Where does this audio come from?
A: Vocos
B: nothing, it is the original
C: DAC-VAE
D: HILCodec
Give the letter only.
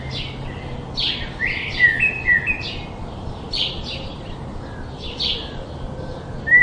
B